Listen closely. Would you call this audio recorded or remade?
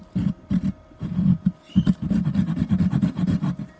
recorded